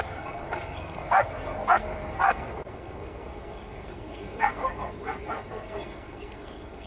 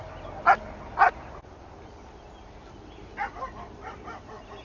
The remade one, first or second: first